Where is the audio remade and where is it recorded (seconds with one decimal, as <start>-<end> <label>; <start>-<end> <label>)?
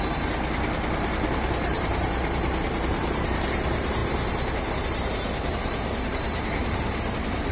0.0-7.5 remade